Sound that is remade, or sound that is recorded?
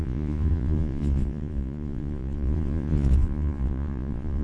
remade